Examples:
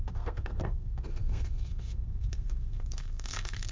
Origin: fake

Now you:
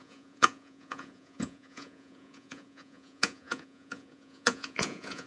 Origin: fake